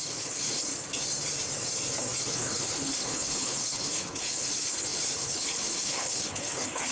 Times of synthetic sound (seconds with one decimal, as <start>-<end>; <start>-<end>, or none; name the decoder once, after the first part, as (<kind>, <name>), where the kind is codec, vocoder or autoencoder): 0.0-0.7 (codec, HILCodec); 2.3-6.9